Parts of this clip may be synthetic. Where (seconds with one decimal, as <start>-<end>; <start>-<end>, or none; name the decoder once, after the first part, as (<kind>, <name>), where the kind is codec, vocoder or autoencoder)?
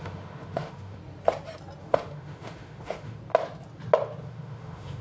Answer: 0.0-1.0 (autoencoder, DAC-VAE); 1.8-3.2; 4.2-5.0